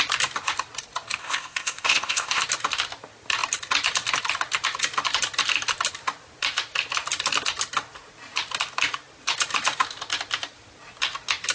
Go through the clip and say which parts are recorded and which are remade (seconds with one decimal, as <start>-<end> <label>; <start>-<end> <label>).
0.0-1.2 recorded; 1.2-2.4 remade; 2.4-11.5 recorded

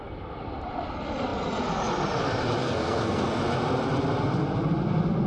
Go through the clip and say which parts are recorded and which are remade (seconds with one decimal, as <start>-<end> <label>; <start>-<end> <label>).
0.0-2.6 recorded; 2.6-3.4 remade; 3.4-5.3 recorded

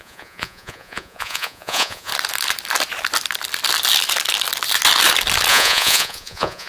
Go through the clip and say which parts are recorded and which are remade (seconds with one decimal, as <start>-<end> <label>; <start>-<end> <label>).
0.0-2.1 remade; 2.1-5.5 recorded; 5.5-6.7 remade